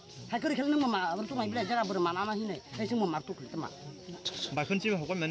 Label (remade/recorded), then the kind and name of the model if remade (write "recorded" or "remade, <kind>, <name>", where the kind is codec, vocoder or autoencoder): recorded